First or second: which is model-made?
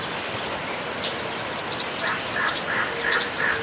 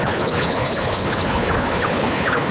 second